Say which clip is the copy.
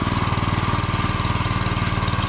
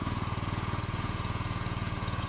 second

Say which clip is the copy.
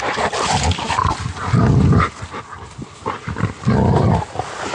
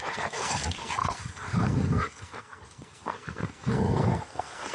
second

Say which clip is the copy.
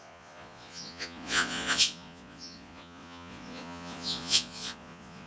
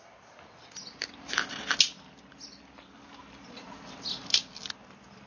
first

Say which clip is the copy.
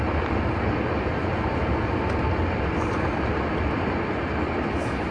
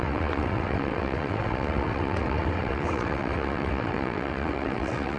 second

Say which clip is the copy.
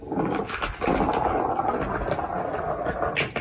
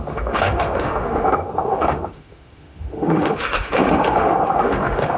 second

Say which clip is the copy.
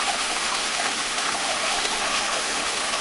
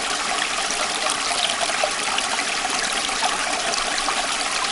first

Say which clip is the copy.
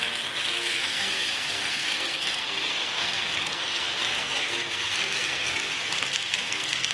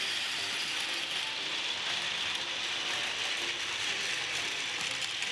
first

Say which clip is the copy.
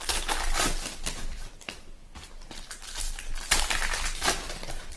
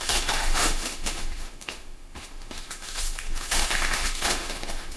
second